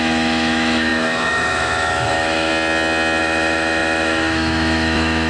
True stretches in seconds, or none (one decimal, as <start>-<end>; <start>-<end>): 2.5-3.2